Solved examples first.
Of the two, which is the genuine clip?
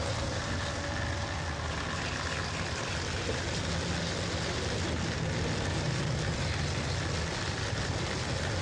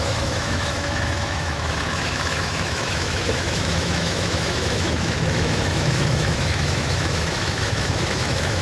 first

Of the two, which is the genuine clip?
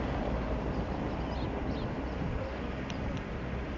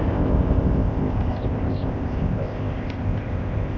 first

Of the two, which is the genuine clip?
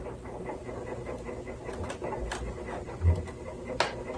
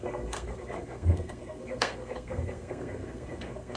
first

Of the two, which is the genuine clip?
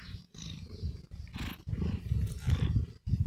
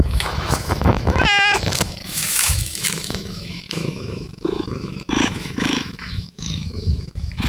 first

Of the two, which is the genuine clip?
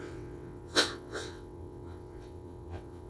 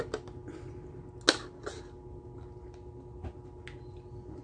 second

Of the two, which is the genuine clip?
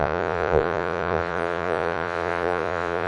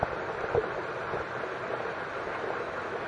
second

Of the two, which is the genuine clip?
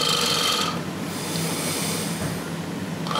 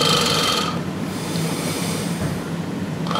first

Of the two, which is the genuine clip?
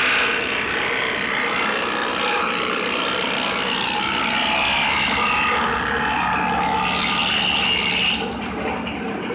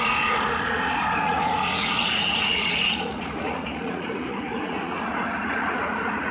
first